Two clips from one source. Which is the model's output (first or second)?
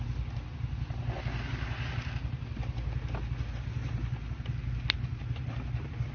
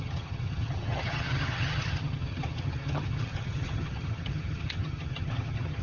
second